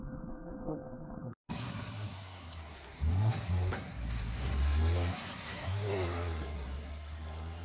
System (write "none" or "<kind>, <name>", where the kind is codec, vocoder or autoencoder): codec, SNAC